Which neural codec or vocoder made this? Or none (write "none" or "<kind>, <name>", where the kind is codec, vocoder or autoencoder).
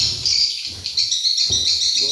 none